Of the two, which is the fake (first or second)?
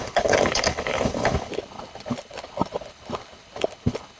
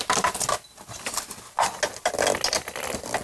first